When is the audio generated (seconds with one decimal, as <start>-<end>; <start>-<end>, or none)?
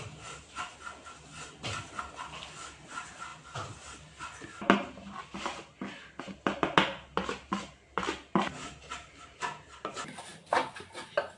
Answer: 10.3-10.9